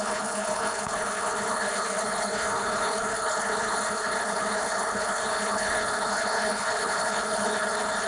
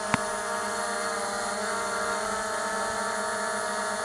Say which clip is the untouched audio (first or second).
second